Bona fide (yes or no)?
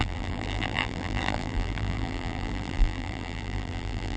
no